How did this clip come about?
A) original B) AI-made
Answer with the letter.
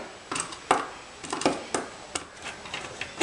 A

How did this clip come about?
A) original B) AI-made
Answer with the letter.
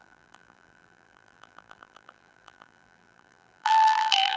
B